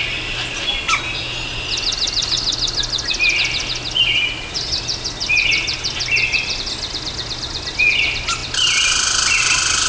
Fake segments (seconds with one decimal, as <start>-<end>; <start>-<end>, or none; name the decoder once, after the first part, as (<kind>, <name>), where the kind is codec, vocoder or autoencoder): none